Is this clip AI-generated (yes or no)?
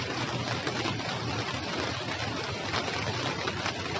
no